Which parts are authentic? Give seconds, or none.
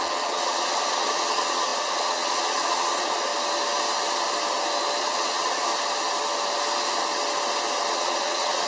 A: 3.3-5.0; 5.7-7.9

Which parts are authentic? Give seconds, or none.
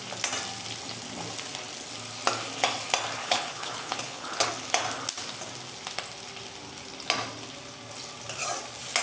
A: 0.0-3.2; 4.5-9.0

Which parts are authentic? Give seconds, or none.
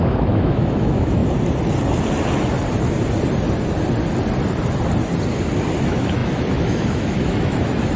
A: 1.2-5.8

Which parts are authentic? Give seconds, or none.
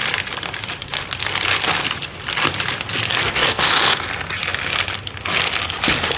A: 0.0-2.9; 3.6-6.2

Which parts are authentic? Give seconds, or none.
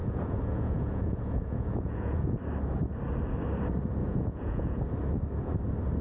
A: 2.4-4.0; 4.8-6.0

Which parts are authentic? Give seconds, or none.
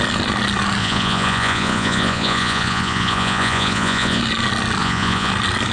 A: 0.0-0.8; 4.2-4.8; 5.3-5.7